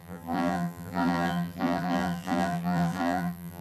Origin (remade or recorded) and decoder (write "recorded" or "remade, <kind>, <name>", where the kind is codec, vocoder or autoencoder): remade, vocoder, BigVGAN v2